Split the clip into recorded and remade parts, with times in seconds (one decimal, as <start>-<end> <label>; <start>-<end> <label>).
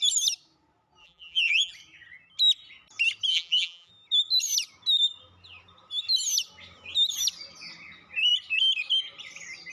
0.0-1.0 recorded; 1.0-1.7 remade; 1.7-3.3 recorded; 3.3-3.9 remade; 3.9-9.7 recorded